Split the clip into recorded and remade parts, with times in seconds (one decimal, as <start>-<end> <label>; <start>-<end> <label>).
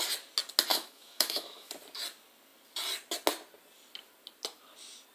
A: 0.0-0.7 recorded; 0.7-1.7 remade; 1.7-5.1 recorded